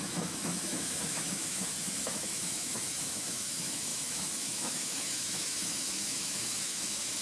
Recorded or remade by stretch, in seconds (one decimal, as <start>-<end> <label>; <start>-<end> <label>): 0.0-7.2 remade